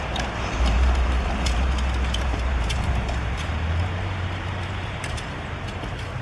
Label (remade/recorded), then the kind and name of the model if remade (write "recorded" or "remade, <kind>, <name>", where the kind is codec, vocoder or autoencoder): remade, vocoder, BigVGAN v2